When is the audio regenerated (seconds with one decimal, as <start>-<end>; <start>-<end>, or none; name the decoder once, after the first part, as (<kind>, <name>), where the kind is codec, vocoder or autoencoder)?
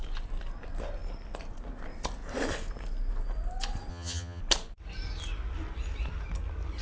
3.9-4.4 (vocoder, HiFi-GAN)